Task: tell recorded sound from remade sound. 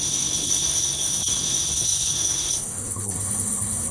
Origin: remade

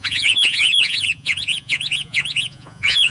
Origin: remade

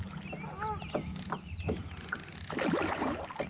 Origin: recorded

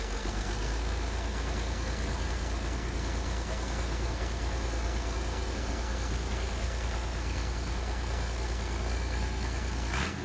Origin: remade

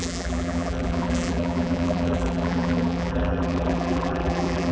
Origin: remade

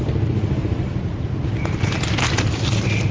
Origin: recorded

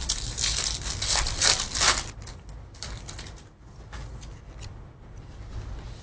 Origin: recorded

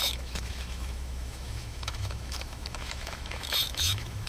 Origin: remade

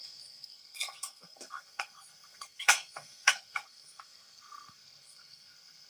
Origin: remade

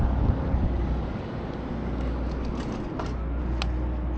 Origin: recorded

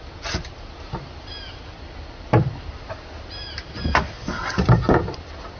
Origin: recorded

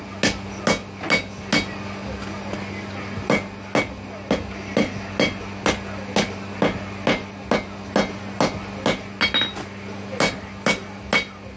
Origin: recorded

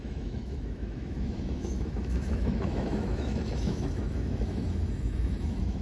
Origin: remade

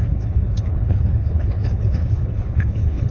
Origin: remade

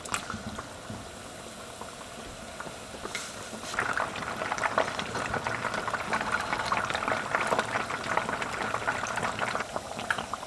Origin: recorded